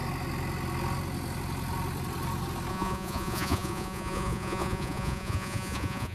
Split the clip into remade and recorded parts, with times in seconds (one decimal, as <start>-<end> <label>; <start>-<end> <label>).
0.0-2.7 recorded; 2.7-6.1 remade